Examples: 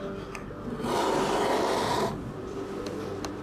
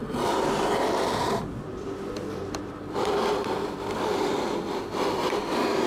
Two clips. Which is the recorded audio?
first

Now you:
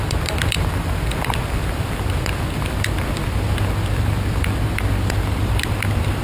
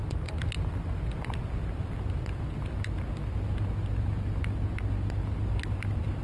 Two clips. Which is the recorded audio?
second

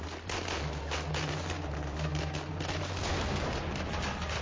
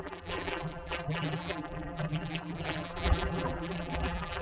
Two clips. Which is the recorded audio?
first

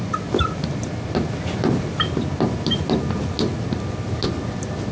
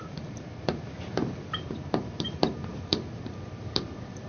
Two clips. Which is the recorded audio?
first